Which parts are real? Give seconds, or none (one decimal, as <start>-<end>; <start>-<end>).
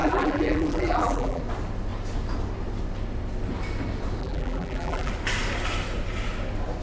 1.4-4.2; 5.1-6.8